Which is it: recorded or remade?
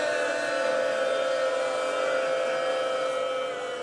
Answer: recorded